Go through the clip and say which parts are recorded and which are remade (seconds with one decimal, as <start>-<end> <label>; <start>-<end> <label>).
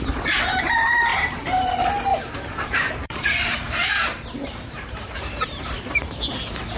0.0-1.1 recorded; 1.1-1.7 remade; 1.7-2.1 recorded; 2.1-6.2 remade; 6.2-6.8 recorded